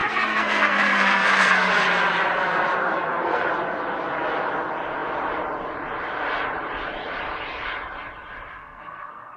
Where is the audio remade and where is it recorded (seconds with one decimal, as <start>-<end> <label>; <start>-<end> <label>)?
0.0-1.7 remade; 1.7-2.8 recorded; 2.8-3.5 remade; 3.5-8.6 recorded; 8.6-9.4 remade